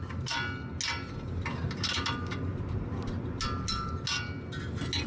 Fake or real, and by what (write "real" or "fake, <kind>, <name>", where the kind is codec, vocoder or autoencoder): real